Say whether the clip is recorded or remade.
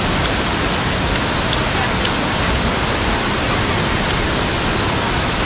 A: recorded